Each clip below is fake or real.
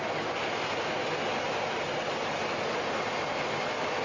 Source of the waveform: real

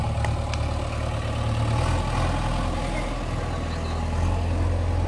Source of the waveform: real